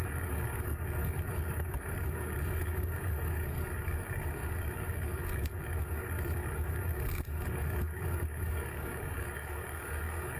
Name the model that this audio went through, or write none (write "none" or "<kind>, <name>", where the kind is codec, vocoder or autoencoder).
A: codec, DAC